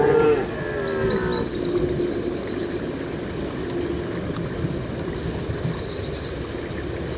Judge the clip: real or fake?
real